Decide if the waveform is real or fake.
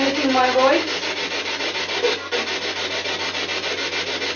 real